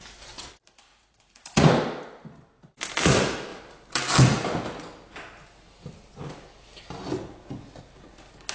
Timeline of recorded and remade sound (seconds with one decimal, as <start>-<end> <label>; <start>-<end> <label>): 0.0-0.9 recorded; 0.9-1.7 remade; 1.7-8.5 recorded